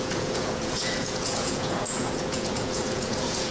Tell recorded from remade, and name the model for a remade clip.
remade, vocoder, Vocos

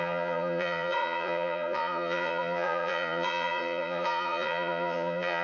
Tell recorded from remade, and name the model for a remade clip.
remade, vocoder, Vocos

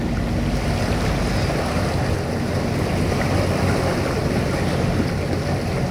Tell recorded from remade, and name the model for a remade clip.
recorded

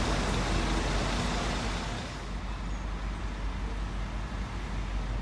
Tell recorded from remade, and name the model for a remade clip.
recorded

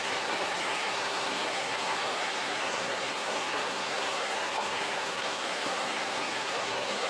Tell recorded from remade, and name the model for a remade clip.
remade, codec, SNAC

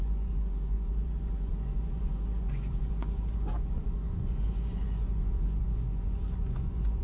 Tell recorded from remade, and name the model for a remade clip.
remade, vocoder, Vocos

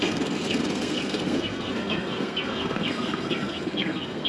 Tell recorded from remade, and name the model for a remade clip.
remade, codec, SNAC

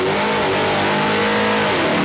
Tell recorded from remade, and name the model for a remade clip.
recorded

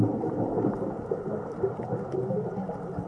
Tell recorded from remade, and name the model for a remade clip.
recorded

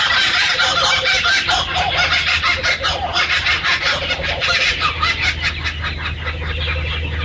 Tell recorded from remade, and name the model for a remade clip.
recorded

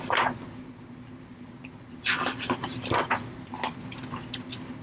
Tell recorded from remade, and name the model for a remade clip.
recorded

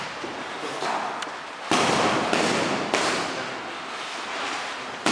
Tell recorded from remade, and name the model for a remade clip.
recorded